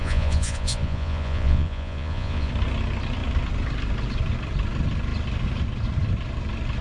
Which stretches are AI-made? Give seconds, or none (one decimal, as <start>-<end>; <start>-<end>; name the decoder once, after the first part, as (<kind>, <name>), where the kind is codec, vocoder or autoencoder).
0.0-2.5 (vocoder, Vocos)